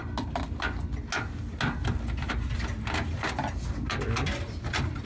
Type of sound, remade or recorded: recorded